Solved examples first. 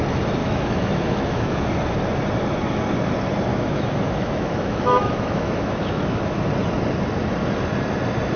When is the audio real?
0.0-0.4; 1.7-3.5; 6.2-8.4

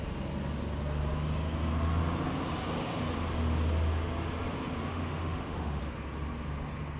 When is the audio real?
0.0-4.9; 5.8-7.0

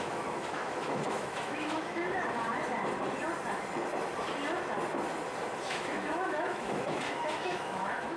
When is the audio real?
2.0-5.7

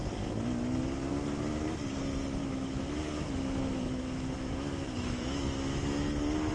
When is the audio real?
0.0-2.4

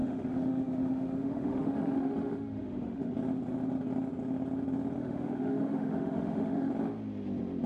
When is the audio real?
3.1-5.0; 6.7-7.7

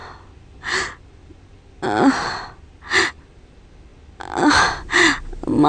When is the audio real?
0.0-5.7